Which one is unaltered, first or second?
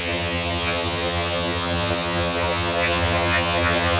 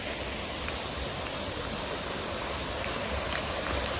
second